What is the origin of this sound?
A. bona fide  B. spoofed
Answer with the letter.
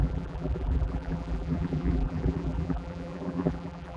B